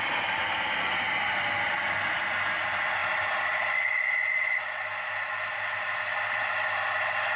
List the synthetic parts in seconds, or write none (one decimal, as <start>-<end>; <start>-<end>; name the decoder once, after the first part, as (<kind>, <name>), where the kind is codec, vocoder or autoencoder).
none